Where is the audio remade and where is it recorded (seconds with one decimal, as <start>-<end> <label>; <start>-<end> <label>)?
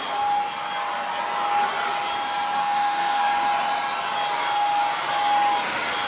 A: 0.0-2.6 recorded; 2.6-3.2 remade; 3.2-6.1 recorded